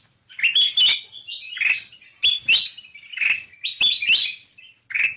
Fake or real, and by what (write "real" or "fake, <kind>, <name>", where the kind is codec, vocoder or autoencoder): real